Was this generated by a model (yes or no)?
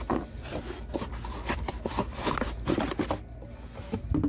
no